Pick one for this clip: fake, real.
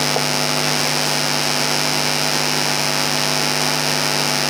real